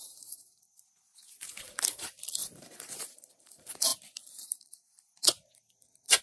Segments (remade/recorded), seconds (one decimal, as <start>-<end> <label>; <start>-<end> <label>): 0.0-3.9 remade; 3.9-6.2 recorded